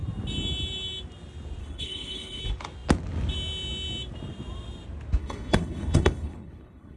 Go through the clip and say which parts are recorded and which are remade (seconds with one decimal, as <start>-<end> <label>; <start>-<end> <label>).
0.0-1.6 recorded; 1.6-2.4 remade; 2.4-5.2 recorded; 5.2-7.0 remade